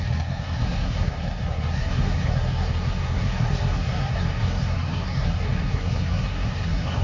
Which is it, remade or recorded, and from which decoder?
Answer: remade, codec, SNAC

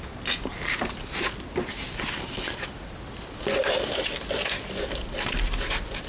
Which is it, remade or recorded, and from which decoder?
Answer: recorded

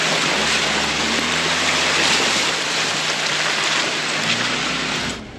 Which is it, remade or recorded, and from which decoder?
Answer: recorded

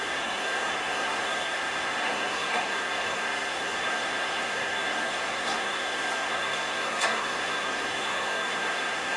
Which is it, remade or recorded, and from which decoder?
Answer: remade, codec, SNAC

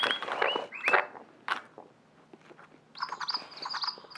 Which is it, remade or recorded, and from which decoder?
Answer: recorded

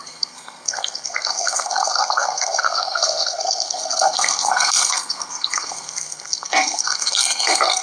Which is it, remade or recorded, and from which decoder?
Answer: remade, codec, SNAC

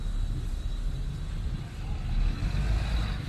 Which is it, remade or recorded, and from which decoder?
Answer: recorded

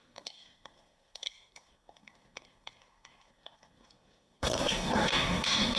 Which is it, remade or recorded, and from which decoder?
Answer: remade, codec, SNAC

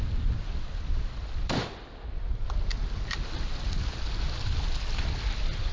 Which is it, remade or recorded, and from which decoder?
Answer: recorded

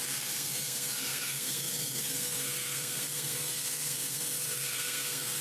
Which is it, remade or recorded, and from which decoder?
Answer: remade, codec, SNAC